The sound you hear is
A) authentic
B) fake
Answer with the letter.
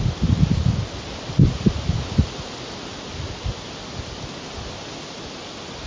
A